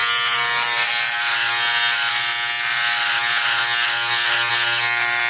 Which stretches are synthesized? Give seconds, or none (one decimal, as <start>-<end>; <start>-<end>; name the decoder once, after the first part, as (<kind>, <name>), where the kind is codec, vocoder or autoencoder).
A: none